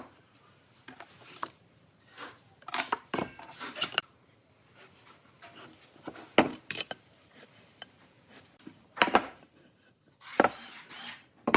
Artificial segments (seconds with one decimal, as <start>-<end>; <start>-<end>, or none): 0.0-4.4; 6.4-11.6